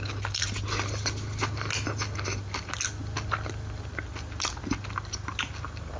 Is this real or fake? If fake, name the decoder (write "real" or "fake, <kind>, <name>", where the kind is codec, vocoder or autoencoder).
real